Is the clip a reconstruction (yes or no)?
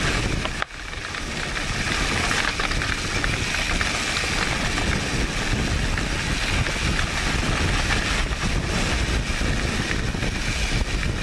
no